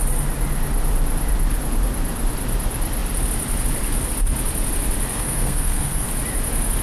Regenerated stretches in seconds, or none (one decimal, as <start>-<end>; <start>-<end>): 5.1-6.1